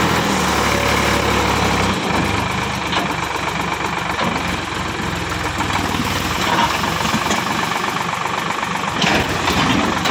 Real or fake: real